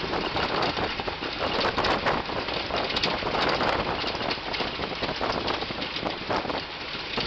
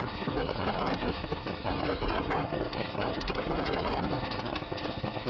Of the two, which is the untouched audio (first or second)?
first